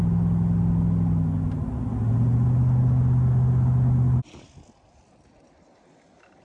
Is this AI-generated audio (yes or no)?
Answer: no